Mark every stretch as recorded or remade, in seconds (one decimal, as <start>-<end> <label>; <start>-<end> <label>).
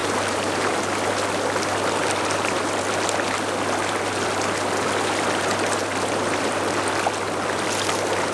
0.0-0.8 remade; 0.8-8.3 recorded